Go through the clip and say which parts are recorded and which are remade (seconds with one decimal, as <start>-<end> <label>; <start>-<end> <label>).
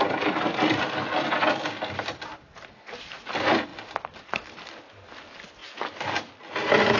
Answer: 0.0-7.0 recorded